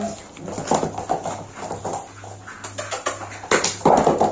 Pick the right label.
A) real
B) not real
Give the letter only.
A